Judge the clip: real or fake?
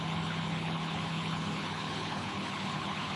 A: fake